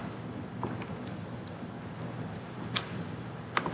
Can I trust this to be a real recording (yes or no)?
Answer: yes